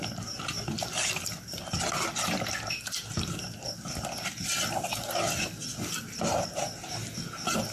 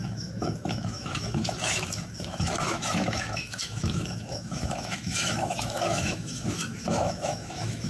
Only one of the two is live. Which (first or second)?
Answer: first